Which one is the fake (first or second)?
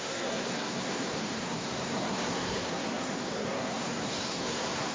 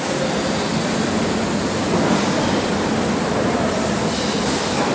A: first